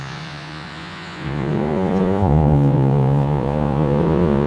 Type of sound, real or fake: fake